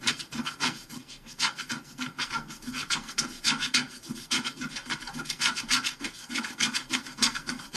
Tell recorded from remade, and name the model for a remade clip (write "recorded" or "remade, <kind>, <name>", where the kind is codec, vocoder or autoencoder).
remade, codec, SNAC